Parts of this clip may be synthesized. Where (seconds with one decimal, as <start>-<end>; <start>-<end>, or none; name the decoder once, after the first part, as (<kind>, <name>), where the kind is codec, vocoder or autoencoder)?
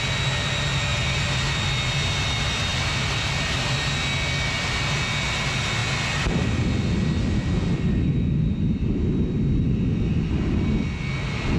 none